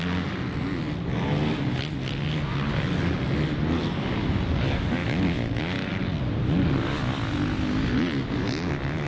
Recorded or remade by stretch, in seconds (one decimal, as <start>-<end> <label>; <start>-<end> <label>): 0.0-5.0 recorded; 5.0-5.6 remade; 5.6-9.1 recorded